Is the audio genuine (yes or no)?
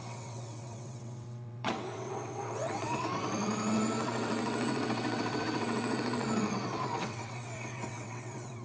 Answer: no